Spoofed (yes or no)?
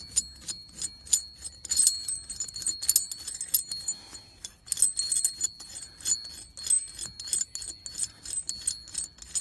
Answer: no